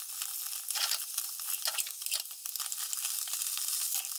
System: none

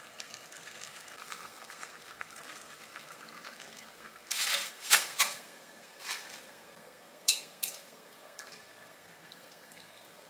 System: codec, SNAC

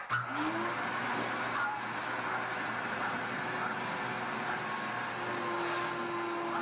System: none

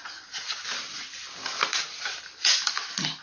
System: none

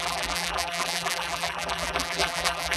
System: vocoder, BigVGAN v2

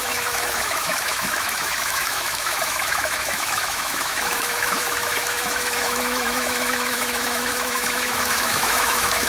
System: autoencoder, DAC-VAE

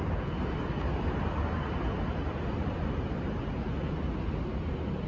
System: none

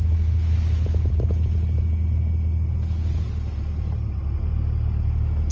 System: none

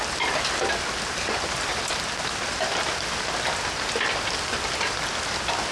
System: none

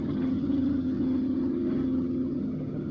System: vocoder, HiFi-GAN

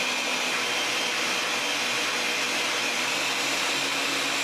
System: none